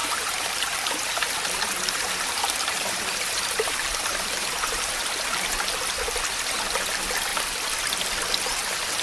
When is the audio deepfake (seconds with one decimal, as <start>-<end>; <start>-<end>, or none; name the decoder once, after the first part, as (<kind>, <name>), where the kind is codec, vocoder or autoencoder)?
0.0-5.0 (vocoder, BigVGAN v2)

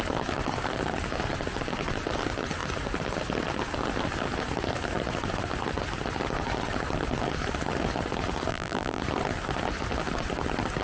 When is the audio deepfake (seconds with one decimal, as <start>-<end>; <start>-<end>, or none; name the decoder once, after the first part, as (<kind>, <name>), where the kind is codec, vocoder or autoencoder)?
8.5-9.0 (vocoder, BigVGAN v2)

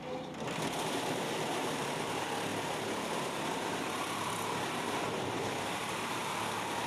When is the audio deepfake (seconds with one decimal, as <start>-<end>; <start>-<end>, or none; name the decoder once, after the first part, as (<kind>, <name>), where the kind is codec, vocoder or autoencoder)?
0.0-6.2 (vocoder, BigVGAN v2)

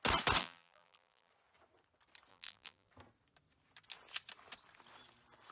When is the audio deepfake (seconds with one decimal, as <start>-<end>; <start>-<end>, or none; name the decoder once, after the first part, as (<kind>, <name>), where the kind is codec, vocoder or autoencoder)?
0.4-1.3 (vocoder, BigVGAN v2); 2.3-2.9